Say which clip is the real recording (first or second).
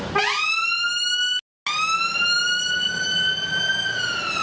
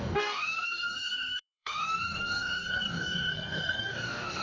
first